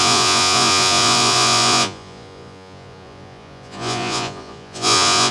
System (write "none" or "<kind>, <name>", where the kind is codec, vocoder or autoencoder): vocoder, Vocos